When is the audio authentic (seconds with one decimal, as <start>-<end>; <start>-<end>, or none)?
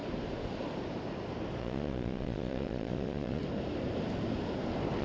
0.0-1.6; 3.4-5.0